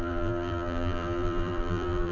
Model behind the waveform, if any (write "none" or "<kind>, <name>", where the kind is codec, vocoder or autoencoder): vocoder, BigVGAN v2